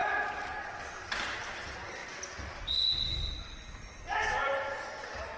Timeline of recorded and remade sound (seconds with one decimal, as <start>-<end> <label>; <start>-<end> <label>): 0.0-5.4 remade

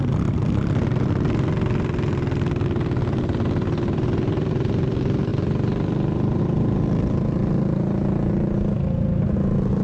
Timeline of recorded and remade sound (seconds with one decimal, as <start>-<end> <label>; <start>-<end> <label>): 0.0-9.8 recorded